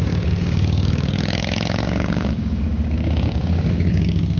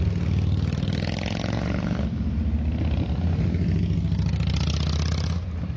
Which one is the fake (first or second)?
first